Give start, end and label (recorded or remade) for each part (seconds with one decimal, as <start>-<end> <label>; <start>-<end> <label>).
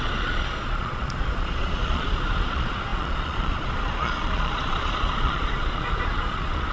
0.0-6.7 remade